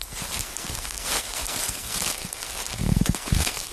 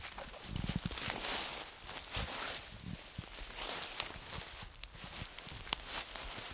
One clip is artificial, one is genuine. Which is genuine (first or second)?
second